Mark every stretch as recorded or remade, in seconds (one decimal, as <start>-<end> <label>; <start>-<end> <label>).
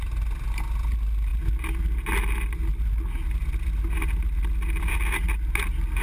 0.0-6.0 recorded